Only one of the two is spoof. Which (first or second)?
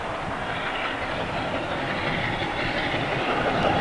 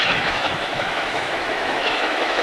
second